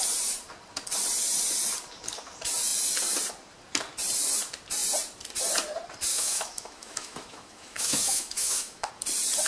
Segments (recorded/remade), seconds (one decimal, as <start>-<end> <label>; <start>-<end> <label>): 0.0-6.1 recorded; 6.1-8.9 remade; 8.9-9.5 recorded